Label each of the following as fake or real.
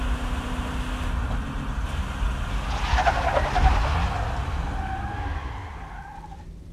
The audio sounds real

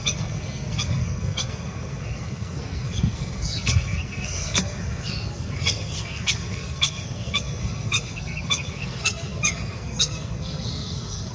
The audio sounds fake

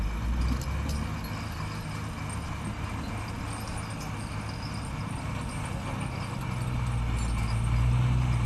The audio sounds real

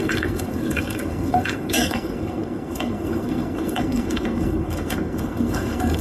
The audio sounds fake